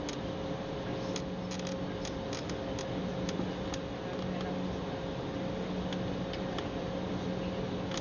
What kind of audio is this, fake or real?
real